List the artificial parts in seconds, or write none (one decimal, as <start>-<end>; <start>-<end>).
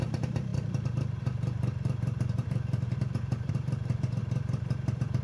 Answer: 0.0-5.2